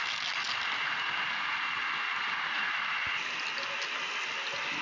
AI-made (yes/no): no